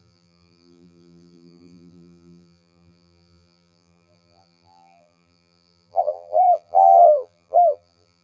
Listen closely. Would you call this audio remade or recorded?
remade